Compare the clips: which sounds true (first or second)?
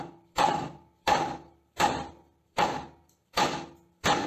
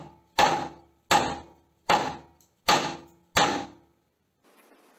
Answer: second